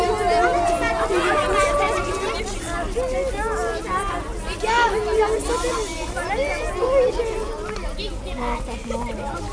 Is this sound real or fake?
real